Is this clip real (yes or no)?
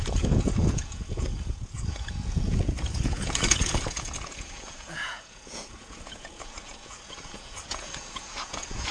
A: no